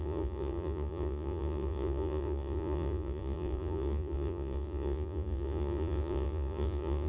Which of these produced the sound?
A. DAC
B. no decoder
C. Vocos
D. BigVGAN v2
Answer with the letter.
C